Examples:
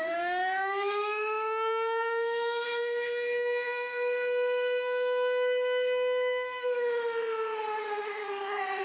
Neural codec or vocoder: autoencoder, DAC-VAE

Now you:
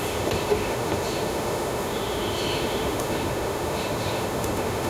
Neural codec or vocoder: autoencoder, DAC-VAE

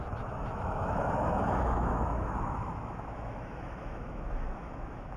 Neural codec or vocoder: autoencoder, DAC-VAE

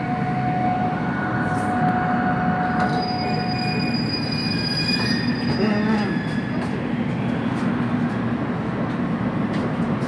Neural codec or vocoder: none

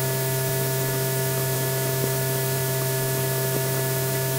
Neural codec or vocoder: autoencoder, DAC-VAE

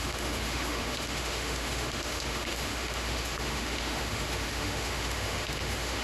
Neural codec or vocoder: autoencoder, DAC-VAE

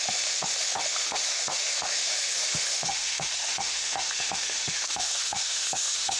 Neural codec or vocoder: autoencoder, DAC-VAE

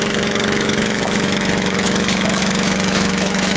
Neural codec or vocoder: autoencoder, DAC-VAE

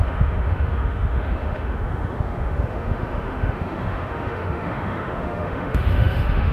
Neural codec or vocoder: autoencoder, DAC-VAE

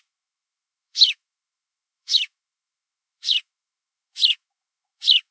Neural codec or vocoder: autoencoder, DAC-VAE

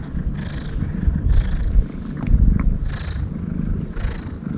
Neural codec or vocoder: none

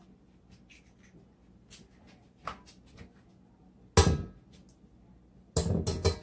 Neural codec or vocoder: none